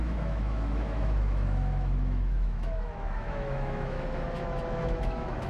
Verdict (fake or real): fake